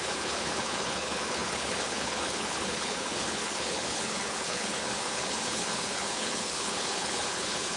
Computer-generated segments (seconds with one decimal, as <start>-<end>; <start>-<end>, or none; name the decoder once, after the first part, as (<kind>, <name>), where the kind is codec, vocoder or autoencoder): 0.0-7.8 (codec, HILCodec)